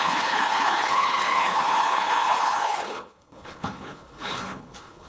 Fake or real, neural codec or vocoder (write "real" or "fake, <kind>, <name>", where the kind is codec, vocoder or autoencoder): fake, codec, HILCodec